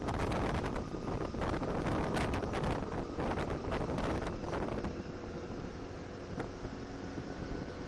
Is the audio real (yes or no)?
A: yes